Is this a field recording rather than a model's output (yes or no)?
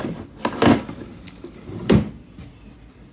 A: yes